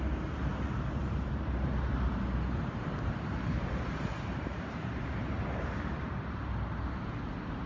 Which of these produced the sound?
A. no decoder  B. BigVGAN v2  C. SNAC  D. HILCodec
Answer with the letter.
B